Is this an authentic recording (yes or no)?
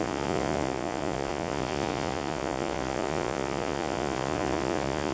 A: no